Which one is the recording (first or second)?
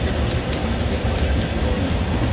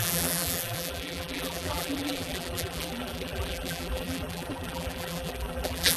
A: first